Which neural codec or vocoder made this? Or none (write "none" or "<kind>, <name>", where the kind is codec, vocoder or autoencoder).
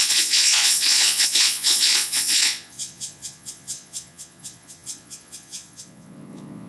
vocoder, Vocos